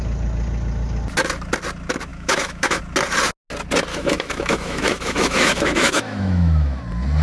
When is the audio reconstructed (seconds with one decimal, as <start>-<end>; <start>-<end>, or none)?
2.1-2.8; 3.9-6.8

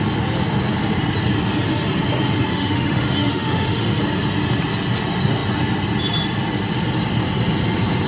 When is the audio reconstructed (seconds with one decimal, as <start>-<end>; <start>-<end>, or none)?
2.5-4.0

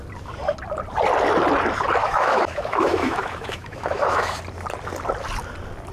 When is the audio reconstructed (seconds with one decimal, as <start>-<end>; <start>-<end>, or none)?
2.0-4.4

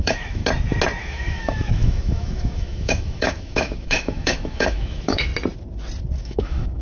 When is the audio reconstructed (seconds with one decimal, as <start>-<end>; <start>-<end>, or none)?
0.0-0.4; 1.0-5.3; 6.2-6.8

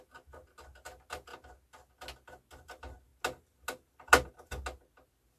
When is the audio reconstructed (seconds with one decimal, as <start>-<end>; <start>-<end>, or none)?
none